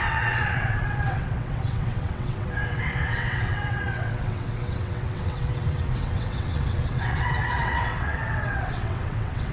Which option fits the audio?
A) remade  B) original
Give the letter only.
A